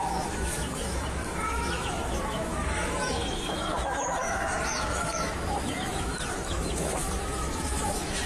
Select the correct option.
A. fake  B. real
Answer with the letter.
A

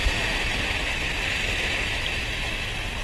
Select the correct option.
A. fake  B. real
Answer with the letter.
B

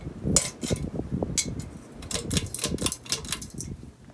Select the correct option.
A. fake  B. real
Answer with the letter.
B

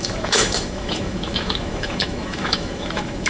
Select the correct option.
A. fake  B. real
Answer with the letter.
A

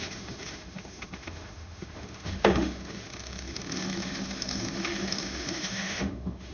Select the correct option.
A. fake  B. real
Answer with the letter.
A